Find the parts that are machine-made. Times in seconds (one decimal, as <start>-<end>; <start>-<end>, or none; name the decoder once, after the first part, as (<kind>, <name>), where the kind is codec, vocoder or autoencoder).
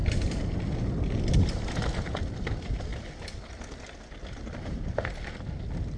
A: none